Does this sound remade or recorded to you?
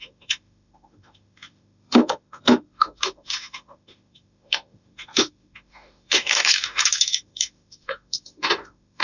remade